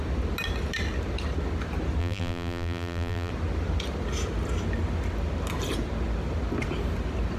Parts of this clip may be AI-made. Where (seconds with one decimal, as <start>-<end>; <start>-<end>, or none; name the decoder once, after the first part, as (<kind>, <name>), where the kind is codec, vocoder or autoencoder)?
2.0-3.3 (vocoder, BigVGAN v2)